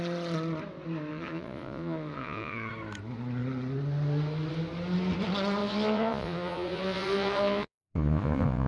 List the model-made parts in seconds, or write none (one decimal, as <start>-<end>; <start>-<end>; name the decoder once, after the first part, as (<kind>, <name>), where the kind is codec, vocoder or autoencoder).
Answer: 1.1-2.7 (vocoder, Vocos); 5.6-8.7